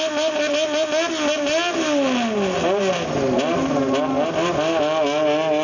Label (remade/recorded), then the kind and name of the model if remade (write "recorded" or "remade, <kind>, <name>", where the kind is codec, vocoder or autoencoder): recorded